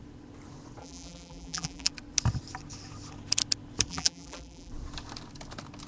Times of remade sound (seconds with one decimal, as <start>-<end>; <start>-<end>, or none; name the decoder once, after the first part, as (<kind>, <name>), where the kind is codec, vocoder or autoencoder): 0.8-1.9 (vocoder, BigVGAN v2); 3.9-4.7